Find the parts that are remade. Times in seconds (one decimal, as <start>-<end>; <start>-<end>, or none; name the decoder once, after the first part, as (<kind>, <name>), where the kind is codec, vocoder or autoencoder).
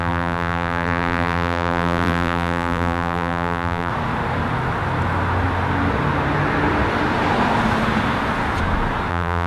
0.0-3.9 (vocoder, BigVGAN v2); 9.1-9.5